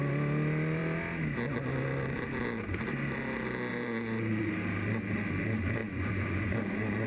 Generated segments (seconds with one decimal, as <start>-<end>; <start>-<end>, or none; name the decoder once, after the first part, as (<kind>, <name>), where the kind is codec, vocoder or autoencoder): 3.7-4.5 (vocoder, Vocos); 5.8-7.1

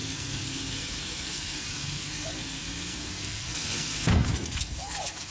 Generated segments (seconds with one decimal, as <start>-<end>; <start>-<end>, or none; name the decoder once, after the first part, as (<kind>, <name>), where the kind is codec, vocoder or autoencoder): 0.0-5.3 (codec, SNAC)

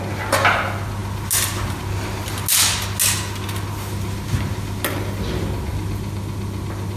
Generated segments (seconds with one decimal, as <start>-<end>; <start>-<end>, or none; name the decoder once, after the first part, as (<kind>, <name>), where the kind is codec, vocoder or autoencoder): none

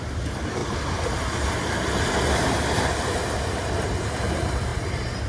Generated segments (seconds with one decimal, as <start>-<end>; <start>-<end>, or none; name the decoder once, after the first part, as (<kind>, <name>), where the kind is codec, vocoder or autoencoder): 0.0-0.6 (vocoder, BigVGAN v2); 3.8-5.3